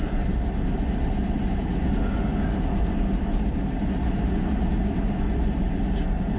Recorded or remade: recorded